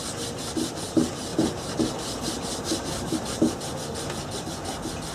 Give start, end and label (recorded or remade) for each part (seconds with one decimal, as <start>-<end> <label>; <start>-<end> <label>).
0.0-5.1 recorded